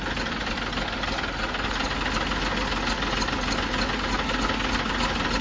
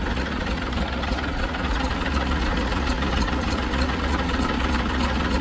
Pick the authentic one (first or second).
first